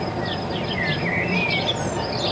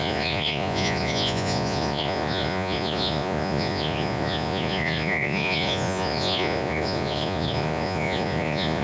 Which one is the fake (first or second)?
second